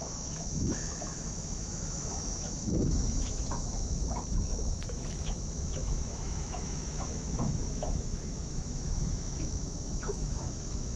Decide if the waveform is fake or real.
fake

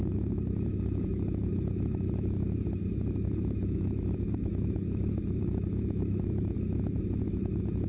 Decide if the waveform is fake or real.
fake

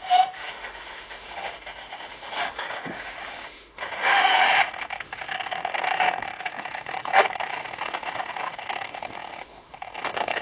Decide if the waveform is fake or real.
fake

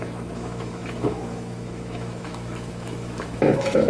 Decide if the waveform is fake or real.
fake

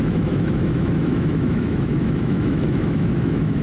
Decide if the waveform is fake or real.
fake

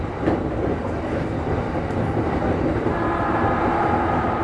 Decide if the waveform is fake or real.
real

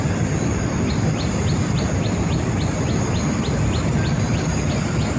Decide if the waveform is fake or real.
real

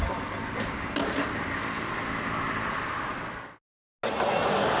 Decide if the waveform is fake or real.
real